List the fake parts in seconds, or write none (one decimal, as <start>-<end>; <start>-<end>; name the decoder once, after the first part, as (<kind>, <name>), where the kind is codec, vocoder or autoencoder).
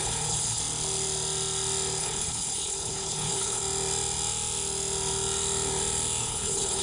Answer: 0.0-0.6 (codec, HILCodec); 2.0-3.6; 6.2-6.8